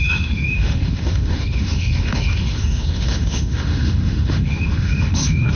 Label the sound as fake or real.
fake